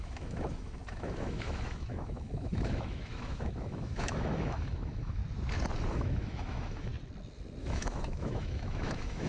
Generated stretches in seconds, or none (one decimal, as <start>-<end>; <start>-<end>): 0.0-5.2; 5.9-6.9; 7.6-9.3